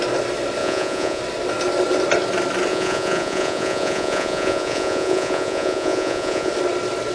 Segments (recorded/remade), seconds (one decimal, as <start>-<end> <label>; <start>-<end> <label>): 0.0-0.6 recorded; 0.6-1.2 remade; 1.2-2.7 recorded; 2.7-6.5 remade; 6.5-7.1 recorded